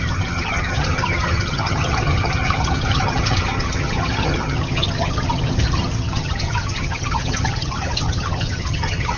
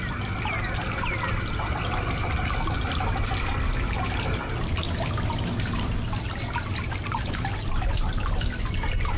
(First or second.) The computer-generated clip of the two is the first